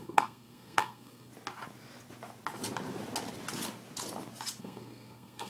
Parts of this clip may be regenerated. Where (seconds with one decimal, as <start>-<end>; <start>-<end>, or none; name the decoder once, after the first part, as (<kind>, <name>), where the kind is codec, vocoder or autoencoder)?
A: 0.0-1.3 (codec, SNAC); 4.6-5.5